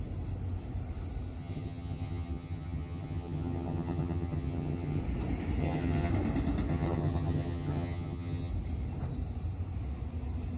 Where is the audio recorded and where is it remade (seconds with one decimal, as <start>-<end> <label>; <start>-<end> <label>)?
0.0-1.4 recorded; 1.4-5.0 remade; 5.0-5.6 recorded; 5.6-6.1 remade; 6.1-6.7 recorded; 6.7-8.5 remade; 8.5-10.6 recorded